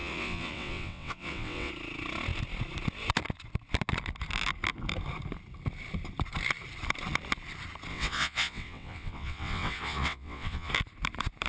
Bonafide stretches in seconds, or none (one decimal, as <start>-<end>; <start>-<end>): 1.7-7.9; 10.7-11.5